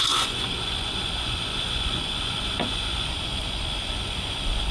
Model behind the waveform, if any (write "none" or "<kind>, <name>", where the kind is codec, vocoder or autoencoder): vocoder, Vocos